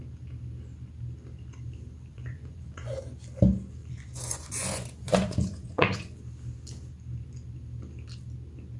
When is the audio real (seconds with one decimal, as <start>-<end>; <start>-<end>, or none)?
0.0-2.1; 3.0-3.8; 6.2-8.8